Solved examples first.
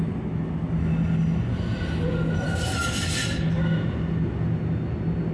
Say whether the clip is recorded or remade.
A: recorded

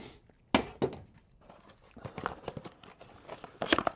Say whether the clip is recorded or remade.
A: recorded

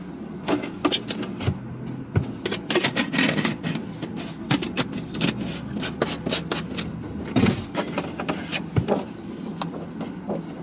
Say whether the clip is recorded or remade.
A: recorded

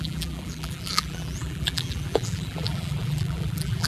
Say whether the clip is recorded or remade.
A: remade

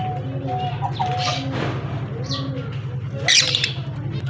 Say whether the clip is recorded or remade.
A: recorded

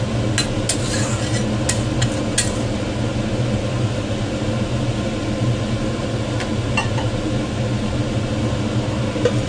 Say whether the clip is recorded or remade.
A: recorded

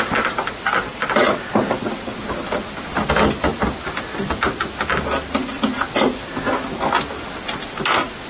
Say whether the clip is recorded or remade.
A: recorded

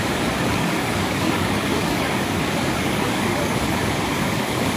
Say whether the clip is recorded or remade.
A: remade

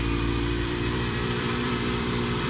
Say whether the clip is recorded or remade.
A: remade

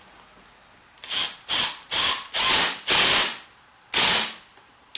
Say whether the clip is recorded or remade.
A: recorded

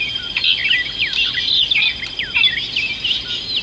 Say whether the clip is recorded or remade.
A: recorded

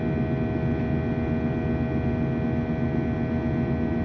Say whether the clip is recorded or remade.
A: recorded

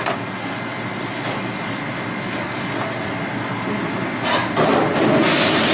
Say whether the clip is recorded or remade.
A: recorded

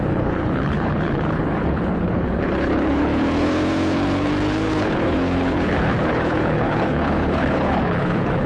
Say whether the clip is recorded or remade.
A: remade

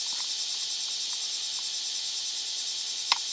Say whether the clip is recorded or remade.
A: recorded